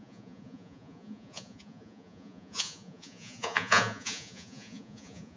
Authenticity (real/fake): fake